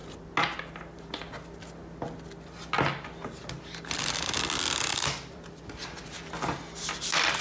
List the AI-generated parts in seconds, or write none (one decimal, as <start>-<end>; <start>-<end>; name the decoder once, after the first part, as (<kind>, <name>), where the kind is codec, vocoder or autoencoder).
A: 4.9-6.3 (vocoder, BigVGAN v2)